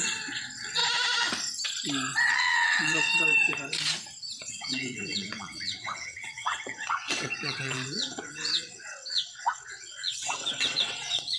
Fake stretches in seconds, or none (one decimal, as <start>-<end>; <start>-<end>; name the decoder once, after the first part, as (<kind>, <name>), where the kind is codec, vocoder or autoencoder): 0.0-0.8 (vocoder, WaveNeXt); 2.3-3.1; 4.5-11.4